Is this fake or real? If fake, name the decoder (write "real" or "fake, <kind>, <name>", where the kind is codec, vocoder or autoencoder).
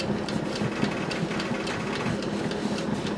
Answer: real